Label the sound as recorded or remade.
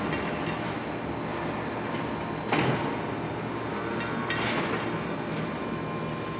recorded